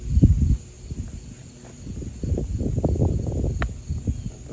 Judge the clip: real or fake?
real